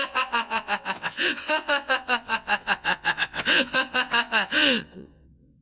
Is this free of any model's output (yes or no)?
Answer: no